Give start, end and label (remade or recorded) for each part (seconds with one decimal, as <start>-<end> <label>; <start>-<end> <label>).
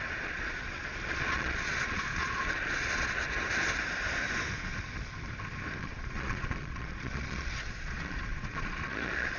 0.0-3.2 remade; 3.2-5.8 recorded; 5.8-9.4 remade